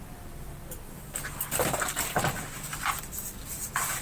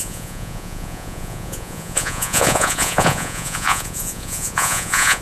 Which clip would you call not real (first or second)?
second